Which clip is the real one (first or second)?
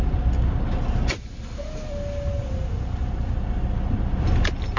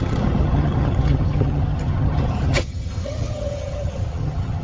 first